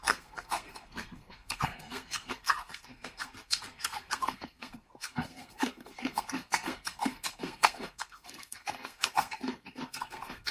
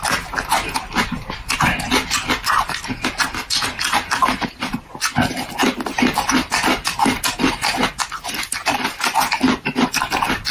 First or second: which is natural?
second